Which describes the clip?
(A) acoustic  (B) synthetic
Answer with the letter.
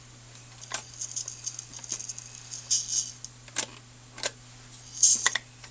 A